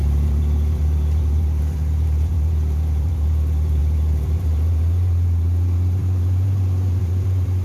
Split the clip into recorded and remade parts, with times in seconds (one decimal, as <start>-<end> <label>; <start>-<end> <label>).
0.0-7.6 remade